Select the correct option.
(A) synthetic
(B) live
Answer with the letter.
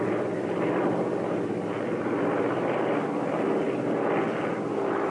A